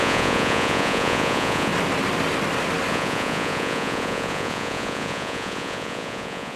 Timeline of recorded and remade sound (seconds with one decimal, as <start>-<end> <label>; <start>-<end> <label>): 0.0-1.7 remade; 1.7-2.9 recorded; 2.9-6.6 remade